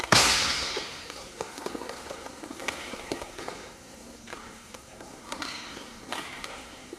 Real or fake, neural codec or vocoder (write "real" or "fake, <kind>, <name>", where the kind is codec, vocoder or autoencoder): fake, codec, SNAC